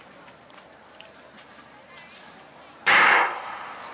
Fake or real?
real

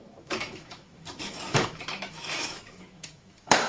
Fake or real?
fake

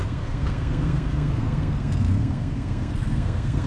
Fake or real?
fake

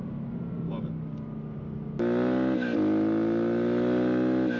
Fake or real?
real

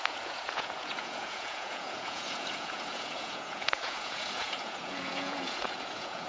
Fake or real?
fake